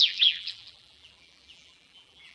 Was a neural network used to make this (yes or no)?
yes